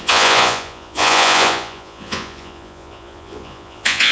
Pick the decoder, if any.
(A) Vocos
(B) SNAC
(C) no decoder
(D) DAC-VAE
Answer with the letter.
A